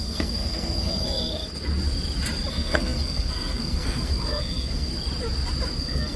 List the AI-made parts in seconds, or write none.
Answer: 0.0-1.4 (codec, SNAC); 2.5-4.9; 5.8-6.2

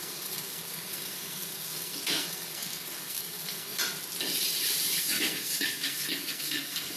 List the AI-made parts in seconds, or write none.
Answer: 0.0-3.8 (codec, SNAC); 5.0-7.0

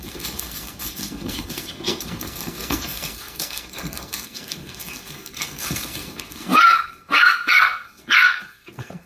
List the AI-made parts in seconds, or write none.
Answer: 0.0-9.1 (codec, SNAC)

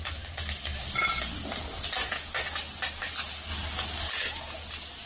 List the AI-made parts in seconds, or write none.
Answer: none

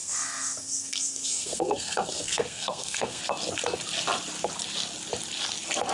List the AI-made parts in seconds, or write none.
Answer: 0.0-3.2 (codec, SNAC)

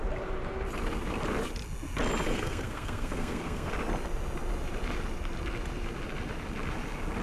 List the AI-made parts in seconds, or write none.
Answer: 2.3-3.7 (codec, SNAC)

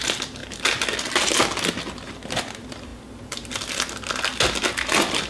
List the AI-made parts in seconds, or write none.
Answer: none